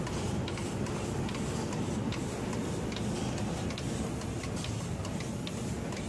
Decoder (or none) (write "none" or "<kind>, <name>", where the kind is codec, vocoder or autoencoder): none